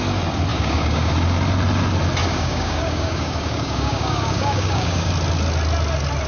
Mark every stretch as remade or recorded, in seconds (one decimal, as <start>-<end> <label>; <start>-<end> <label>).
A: 0.0-0.5 recorded; 0.5-1.1 remade; 1.1-2.2 recorded; 2.2-5.1 remade; 5.1-6.3 recorded